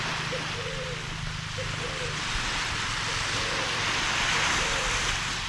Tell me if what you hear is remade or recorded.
recorded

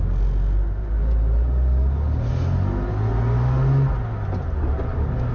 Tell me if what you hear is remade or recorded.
recorded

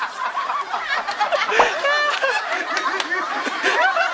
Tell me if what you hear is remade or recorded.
recorded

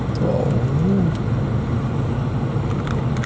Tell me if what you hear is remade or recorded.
recorded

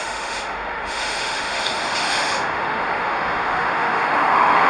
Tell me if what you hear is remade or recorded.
remade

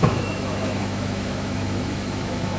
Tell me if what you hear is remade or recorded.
remade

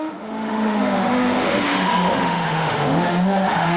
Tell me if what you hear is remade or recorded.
remade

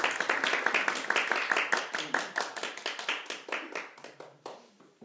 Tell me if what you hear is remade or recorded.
recorded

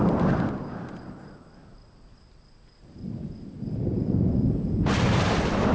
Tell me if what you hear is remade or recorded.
recorded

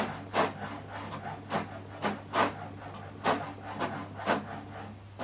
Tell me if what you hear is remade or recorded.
recorded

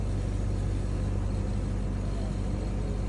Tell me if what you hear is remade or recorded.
recorded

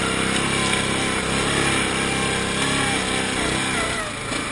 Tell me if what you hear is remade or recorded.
recorded